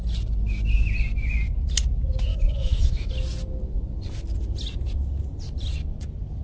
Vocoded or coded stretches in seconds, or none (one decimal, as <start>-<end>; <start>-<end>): 2.3-3.1

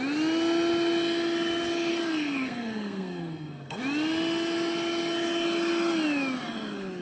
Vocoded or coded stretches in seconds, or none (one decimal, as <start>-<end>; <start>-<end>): 1.9-3.8

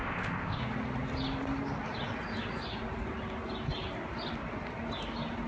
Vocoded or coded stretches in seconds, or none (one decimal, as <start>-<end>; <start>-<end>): 0.0-0.6